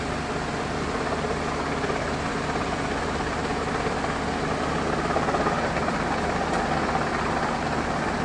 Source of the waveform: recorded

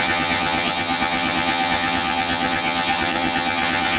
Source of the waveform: remade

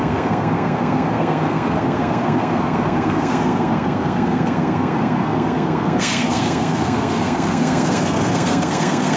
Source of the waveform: remade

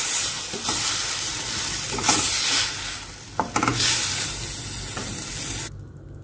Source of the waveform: recorded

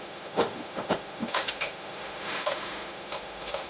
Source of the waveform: remade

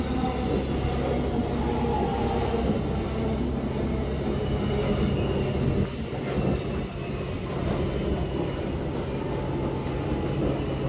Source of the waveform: recorded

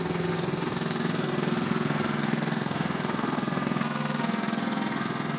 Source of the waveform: remade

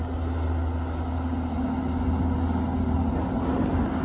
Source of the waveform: recorded